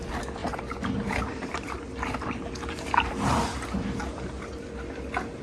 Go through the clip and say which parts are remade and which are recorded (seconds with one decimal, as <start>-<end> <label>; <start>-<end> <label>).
0.0-0.4 recorded; 0.4-1.8 remade; 1.8-5.4 recorded